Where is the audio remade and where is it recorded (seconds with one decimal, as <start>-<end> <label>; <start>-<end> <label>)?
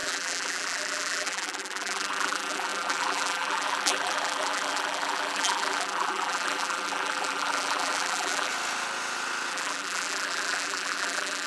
0.0-8.5 remade; 8.5-9.5 recorded; 9.5-11.5 remade